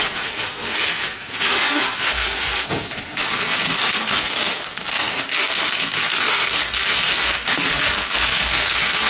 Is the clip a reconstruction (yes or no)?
yes